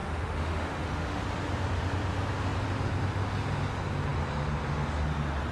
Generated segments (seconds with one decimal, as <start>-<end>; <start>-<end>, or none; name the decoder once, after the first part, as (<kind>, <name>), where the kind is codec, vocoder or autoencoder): 0.0-1.2 (autoencoder, DAC-VAE)